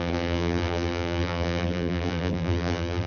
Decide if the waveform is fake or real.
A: fake